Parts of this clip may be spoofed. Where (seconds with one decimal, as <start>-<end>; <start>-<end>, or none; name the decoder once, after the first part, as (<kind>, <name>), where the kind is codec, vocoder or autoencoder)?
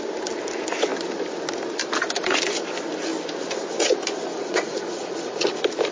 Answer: 4.3-5.5 (vocoder, Vocos)